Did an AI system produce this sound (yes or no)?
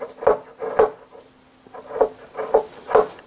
no